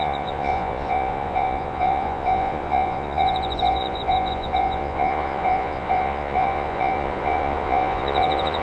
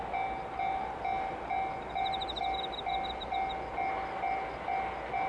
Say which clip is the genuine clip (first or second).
second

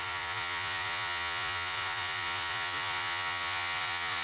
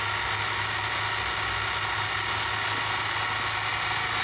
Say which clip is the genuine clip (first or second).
second